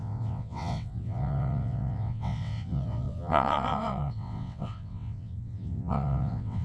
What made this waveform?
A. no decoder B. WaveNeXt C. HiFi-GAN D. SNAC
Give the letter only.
B